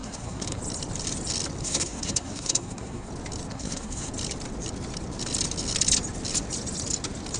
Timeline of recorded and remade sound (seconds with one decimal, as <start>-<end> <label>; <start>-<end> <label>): 0.0-0.6 remade; 0.6-1.6 recorded; 1.6-3.1 remade; 3.1-3.5 recorded; 3.5-4.1 remade; 4.1-7.4 recorded